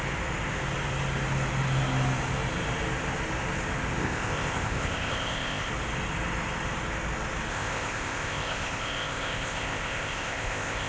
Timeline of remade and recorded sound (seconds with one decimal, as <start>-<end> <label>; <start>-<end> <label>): 0.0-4.0 recorded; 4.0-5.7 remade; 5.7-7.5 recorded; 7.5-10.9 remade